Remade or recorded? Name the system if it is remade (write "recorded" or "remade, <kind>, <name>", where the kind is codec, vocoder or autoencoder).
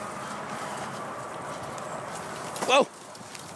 recorded